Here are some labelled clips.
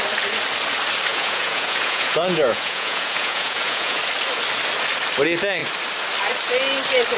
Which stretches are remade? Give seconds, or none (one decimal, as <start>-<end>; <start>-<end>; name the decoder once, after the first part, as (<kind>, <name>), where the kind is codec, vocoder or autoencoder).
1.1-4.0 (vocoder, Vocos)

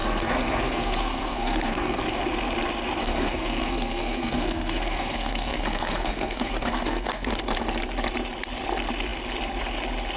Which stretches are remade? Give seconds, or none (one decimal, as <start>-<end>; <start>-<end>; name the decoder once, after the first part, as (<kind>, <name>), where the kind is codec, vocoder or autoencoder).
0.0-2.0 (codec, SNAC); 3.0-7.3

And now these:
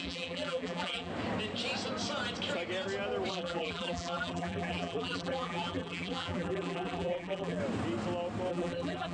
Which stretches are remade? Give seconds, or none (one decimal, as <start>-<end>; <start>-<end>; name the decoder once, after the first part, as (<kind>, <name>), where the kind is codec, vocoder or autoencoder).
0.0-1.1 (vocoder, BigVGAN v2); 3.3-7.6; 8.5-9.1